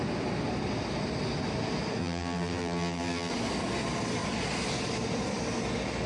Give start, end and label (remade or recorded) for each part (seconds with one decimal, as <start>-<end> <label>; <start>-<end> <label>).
0.0-2.0 recorded; 2.0-3.3 remade; 3.3-6.1 recorded